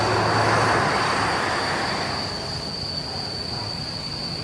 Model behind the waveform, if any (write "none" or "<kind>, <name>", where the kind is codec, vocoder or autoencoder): none